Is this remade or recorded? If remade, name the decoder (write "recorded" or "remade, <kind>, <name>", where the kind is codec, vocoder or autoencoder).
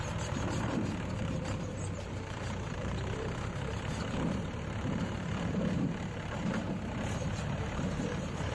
remade, vocoder, BigVGAN v2